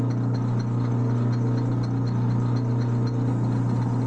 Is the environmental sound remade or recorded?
recorded